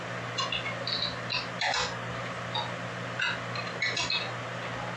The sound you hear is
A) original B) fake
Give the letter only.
A